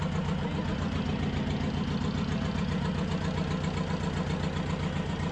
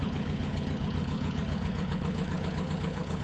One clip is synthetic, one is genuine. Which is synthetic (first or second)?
second